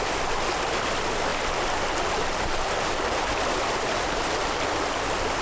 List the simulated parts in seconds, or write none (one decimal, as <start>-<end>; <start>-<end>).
none